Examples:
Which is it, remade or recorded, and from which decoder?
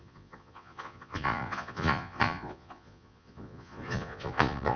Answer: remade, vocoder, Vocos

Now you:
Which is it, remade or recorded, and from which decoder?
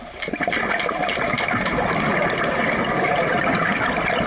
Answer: recorded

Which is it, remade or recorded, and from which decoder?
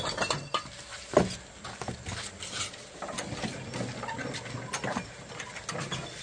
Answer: recorded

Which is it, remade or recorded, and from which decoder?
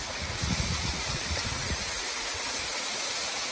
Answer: remade, vocoder, Vocos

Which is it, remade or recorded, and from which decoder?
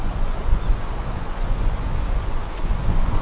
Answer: remade, vocoder, Vocos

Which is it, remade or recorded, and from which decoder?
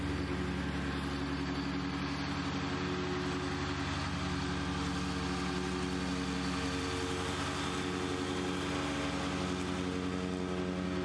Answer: recorded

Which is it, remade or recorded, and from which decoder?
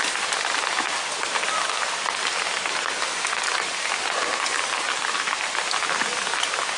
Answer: recorded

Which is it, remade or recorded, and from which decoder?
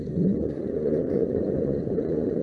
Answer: remade, vocoder, Vocos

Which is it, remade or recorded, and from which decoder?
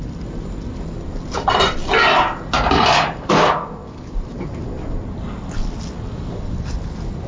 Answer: recorded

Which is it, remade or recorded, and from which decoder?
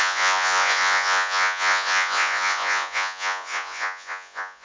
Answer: remade, vocoder, Vocos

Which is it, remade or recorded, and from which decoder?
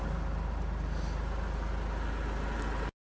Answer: recorded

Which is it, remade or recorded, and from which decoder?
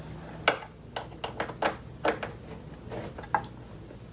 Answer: recorded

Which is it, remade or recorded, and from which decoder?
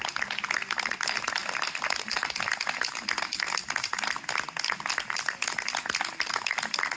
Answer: recorded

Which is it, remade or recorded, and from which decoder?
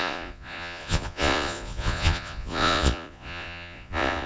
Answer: remade, vocoder, Vocos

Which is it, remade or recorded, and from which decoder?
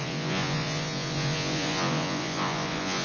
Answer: remade, vocoder, Vocos